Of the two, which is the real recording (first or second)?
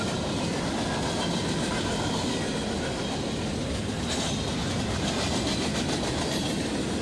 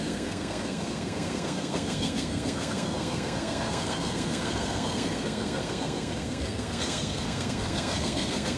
first